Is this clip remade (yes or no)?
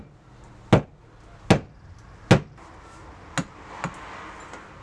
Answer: no